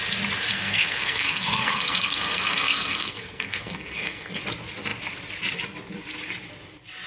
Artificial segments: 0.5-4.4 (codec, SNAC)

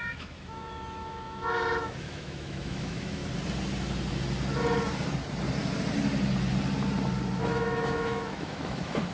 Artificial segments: 0.0-3.2 (autoencoder, DAC-VAE); 7.4-9.1

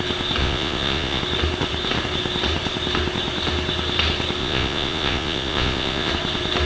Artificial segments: 0.4-1.2 (vocoder, Vocos); 4.4-6.1

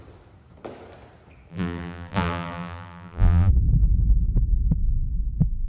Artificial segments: 1.5-3.5 (vocoder, BigVGAN v2)

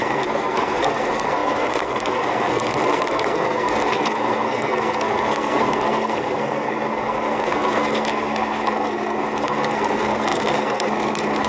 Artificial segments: 0.0-11.5 (codec, SNAC)